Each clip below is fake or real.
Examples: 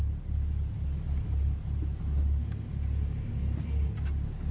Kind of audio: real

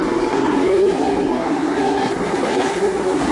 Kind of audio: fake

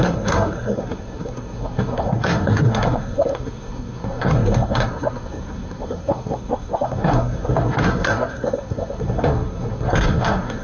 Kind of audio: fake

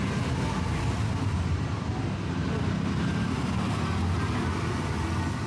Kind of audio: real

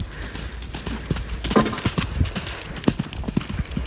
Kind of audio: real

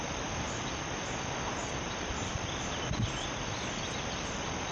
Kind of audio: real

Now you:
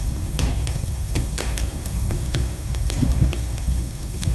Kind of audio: fake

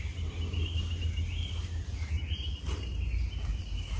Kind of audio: real